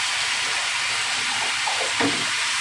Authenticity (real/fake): fake